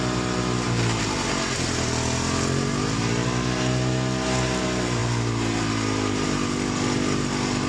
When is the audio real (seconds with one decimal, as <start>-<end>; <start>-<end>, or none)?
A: 0.0-7.7